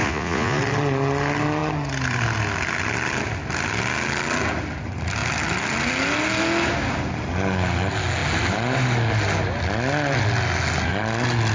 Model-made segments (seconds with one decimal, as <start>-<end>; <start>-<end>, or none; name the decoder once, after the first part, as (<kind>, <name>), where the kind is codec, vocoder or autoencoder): 0.0-0.6 (vocoder, Vocos)